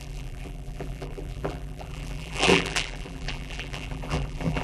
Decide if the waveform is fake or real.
fake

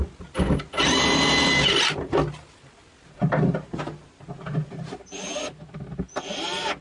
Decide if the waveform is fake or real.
real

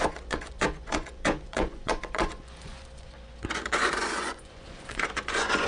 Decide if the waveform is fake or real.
fake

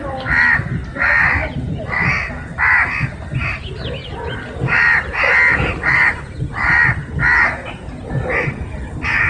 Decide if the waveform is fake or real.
real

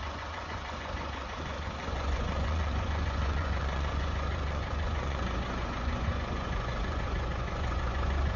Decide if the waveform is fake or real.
fake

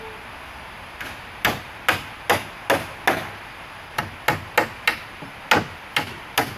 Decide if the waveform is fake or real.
real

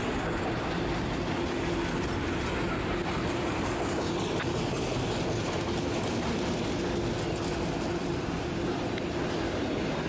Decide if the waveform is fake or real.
real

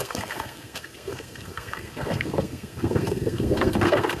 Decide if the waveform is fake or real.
fake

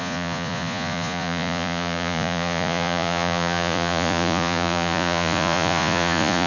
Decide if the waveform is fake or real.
fake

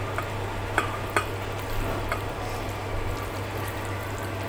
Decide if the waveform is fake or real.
real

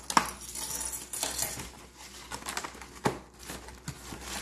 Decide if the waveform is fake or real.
real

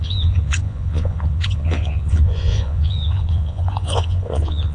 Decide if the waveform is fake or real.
fake